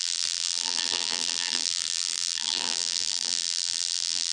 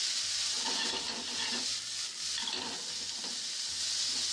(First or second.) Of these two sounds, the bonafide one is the second